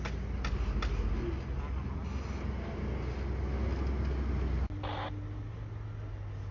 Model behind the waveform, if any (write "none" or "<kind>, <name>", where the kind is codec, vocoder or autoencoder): none